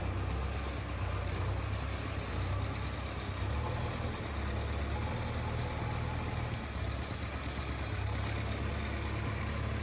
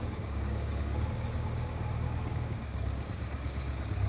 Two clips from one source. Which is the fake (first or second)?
second